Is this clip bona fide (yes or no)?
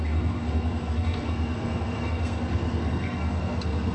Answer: no